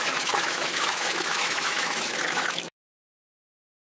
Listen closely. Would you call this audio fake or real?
fake